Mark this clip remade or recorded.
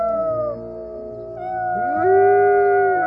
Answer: recorded